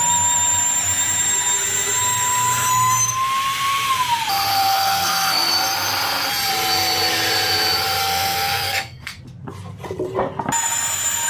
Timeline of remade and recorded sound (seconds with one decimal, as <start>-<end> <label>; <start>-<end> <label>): 0.0-4.5 recorded; 4.5-5.5 remade; 5.5-8.0 recorded; 8.0-9.2 remade; 9.2-11.3 recorded